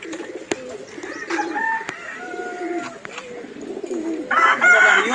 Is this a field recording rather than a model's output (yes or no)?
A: yes